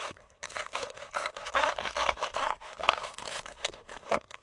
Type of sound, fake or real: fake